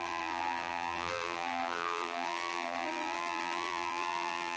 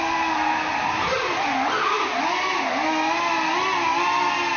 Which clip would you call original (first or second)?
second